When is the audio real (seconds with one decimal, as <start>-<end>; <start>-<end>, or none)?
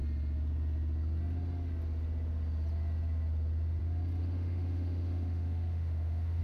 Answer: 0.0-4.2